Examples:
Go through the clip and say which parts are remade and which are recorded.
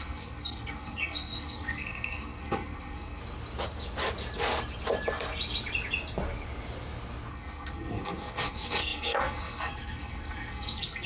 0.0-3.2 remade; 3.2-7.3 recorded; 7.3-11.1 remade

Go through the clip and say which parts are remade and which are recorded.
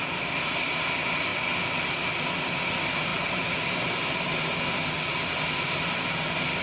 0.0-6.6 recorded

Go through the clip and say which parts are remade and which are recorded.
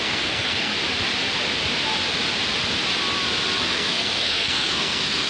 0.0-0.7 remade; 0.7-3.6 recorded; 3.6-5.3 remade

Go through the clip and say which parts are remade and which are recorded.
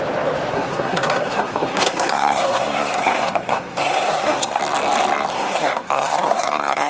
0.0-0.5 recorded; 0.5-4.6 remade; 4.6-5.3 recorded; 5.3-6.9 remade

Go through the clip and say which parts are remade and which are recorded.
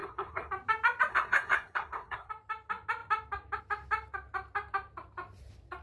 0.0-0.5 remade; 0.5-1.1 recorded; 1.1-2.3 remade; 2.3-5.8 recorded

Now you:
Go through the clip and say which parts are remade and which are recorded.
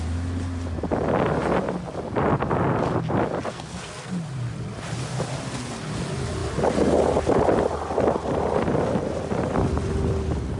0.0-3.5 recorded; 3.5-4.1 remade; 4.1-10.6 recorded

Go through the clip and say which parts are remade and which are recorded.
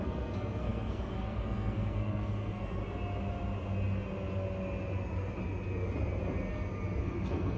0.0-2.8 remade; 2.8-7.0 recorded; 7.0-7.6 remade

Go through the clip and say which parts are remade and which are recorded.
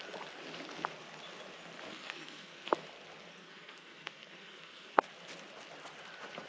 0.0-1.9 recorded; 1.9-2.7 remade; 2.7-3.3 recorded; 3.3-5.0 remade; 5.0-6.5 recorded